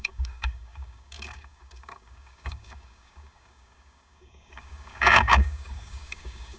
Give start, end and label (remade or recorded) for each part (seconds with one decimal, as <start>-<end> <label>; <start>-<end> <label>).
0.0-6.6 remade